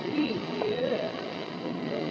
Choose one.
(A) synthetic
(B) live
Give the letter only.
A